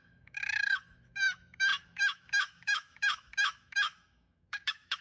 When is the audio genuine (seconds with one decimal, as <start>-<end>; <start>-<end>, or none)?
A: none